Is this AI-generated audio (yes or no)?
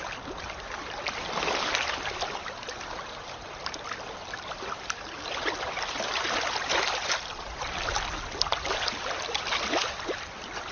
yes